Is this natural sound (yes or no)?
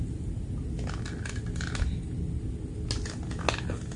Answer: yes